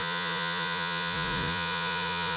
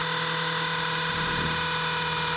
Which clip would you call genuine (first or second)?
second